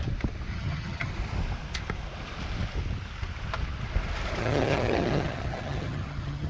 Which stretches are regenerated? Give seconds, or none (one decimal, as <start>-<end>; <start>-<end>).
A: 0.5-1.1; 4.4-6.5